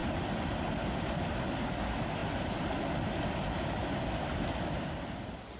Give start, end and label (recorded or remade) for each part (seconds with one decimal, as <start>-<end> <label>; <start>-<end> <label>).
0.0-5.6 recorded